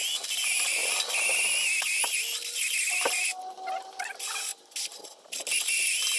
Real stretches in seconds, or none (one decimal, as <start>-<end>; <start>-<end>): 0.0-6.2